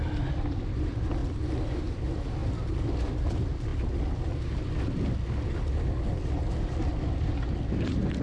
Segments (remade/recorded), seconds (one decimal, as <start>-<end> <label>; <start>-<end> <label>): 0.0-1.2 remade; 1.2-1.8 recorded; 1.8-2.4 remade; 2.4-3.2 recorded; 3.2-3.7 remade; 3.7-5.5 recorded; 5.5-8.2 remade